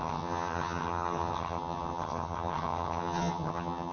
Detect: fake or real fake